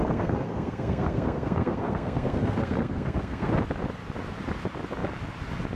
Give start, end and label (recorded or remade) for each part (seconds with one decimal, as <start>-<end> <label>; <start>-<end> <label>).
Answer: 0.0-3.5 remade; 3.5-5.8 recorded